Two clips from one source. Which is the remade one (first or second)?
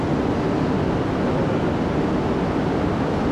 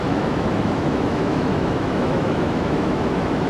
second